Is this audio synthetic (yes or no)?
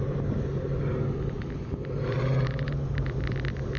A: no